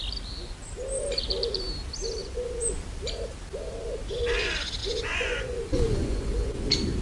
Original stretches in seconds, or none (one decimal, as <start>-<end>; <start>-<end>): 0.0-2.2; 2.8-4.8; 6.6-7.0